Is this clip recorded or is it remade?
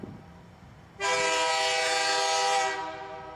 recorded